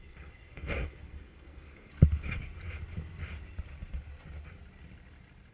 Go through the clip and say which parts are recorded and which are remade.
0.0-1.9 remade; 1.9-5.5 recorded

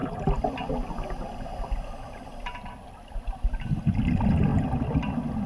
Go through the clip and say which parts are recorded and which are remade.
0.0-0.7 remade; 0.7-4.5 recorded; 4.5-5.1 remade; 5.1-5.5 recorded

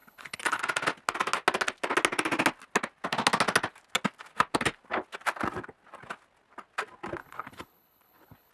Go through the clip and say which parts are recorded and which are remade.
0.0-0.6 remade; 0.6-7.2 recorded; 7.2-8.5 remade

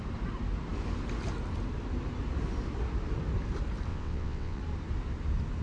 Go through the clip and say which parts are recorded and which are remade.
0.0-3.9 recorded; 3.9-4.6 remade; 4.6-5.6 recorded

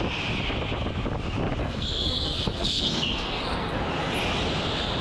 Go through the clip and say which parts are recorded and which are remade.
0.0-1.6 recorded; 1.6-3.8 remade; 3.8-5.0 recorded

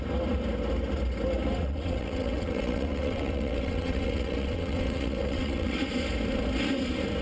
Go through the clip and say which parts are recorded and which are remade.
0.0-1.6 recorded; 1.6-5.9 remade; 5.9-7.2 recorded

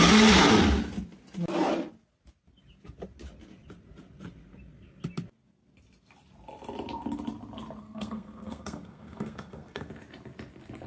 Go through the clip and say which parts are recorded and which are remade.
0.0-7.8 recorded; 7.8-9.9 remade; 9.9-10.9 recorded

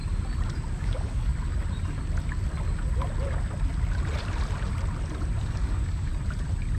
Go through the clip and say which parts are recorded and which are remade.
0.0-0.7 recorded; 0.7-1.3 remade; 1.3-5.4 recorded; 5.4-6.1 remade; 6.1-6.8 recorded